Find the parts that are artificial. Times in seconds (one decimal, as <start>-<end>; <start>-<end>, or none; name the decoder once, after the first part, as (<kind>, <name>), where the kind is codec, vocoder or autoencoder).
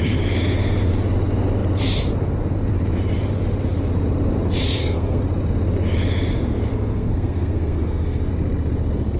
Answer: 4.7-5.2 (codec, SNAC); 6.7-8.3